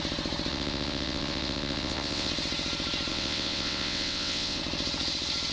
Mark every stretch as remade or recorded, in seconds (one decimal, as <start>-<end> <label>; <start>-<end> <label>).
0.0-0.5 recorded; 0.5-2.3 remade; 2.3-3.1 recorded; 3.1-4.6 remade; 4.6-5.5 recorded